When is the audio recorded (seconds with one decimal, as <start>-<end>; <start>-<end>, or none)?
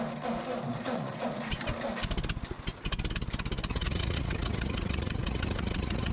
0.0-0.7; 1.6-3.7